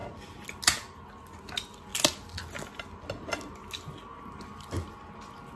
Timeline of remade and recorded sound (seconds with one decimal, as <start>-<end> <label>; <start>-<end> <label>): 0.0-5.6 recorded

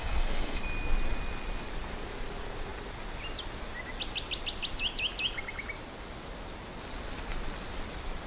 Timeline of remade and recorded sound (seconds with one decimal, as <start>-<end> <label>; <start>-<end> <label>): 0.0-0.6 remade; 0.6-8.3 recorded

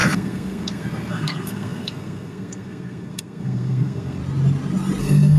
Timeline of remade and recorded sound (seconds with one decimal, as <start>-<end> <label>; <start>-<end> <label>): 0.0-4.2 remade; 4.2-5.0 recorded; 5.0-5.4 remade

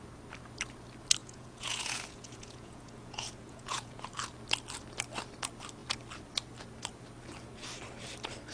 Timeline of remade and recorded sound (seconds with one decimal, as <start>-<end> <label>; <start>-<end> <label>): 0.0-1.2 recorded; 1.2-4.1 remade; 4.1-8.5 recorded

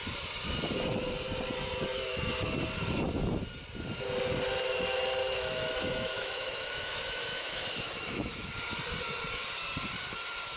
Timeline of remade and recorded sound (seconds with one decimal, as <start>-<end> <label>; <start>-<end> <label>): 0.0-5.2 recorded; 5.2-8.5 remade; 8.5-10.6 recorded

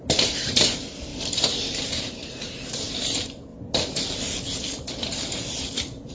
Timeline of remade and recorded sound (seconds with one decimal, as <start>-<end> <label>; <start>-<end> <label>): 0.0-3.5 remade; 3.5-6.1 recorded

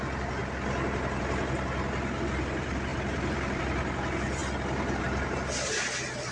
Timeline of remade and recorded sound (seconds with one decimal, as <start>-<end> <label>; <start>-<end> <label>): 0.0-2.9 recorded; 2.9-3.6 remade; 3.6-6.3 recorded